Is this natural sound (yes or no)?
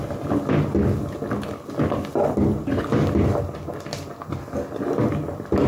yes